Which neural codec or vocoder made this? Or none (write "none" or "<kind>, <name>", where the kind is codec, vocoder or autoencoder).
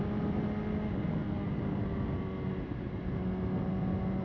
none